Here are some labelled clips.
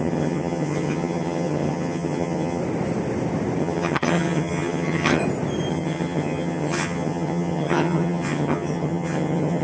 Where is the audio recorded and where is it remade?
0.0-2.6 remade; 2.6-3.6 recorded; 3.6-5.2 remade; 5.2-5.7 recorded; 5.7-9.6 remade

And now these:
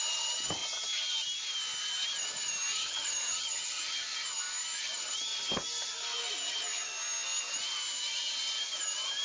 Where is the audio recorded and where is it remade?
0.0-2.8 recorded; 2.8-3.8 remade; 3.8-9.2 recorded

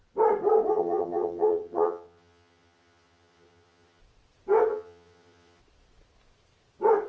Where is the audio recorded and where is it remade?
0.0-0.7 recorded; 0.7-4.0 remade; 4.0-4.7 recorded; 4.7-5.6 remade; 5.6-7.1 recorded